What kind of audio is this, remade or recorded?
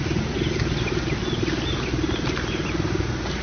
recorded